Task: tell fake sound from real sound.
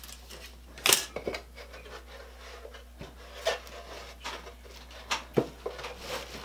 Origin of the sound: real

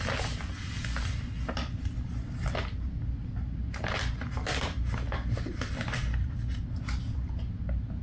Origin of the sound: real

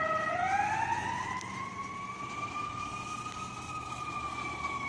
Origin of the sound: real